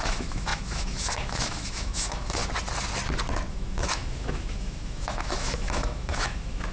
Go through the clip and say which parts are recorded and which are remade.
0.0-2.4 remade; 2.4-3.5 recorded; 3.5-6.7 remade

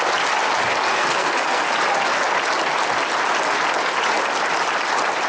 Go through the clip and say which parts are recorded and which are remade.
0.0-0.9 recorded; 0.9-1.7 remade; 1.7-5.3 recorded

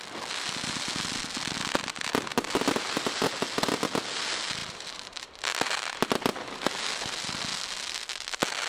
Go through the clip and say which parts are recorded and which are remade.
0.0-2.3 recorded; 2.3-2.9 remade; 2.9-4.6 recorded; 4.6-5.3 remade; 5.3-8.7 recorded

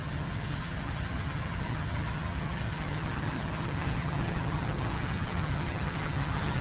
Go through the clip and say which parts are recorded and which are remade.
0.0-6.6 remade

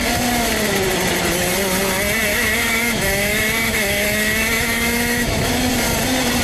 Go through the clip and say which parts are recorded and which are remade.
0.0-2.3 recorded; 2.3-5.7 remade; 5.7-6.4 recorded

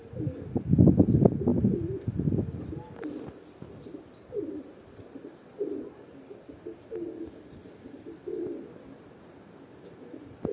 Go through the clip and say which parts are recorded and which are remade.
0.0-10.5 recorded